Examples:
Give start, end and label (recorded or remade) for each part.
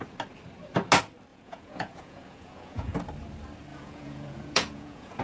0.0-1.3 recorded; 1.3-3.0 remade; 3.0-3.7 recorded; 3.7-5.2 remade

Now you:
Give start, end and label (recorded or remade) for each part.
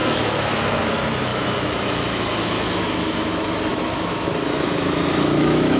0.0-5.8 remade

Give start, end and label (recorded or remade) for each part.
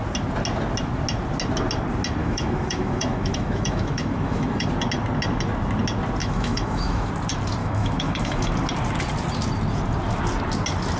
0.0-2.2 recorded; 2.2-4.7 remade; 4.7-6.2 recorded; 6.2-7.1 remade; 7.1-7.6 recorded; 7.6-8.5 remade; 8.5-11.0 recorded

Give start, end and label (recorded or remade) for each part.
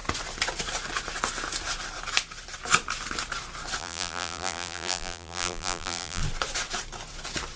0.0-3.8 recorded; 3.8-6.2 remade; 6.2-7.6 recorded